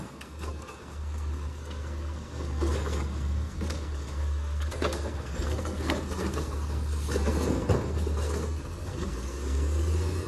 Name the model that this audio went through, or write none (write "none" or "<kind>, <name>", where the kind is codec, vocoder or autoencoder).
codec, SNAC